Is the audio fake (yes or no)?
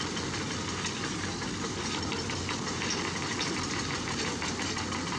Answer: no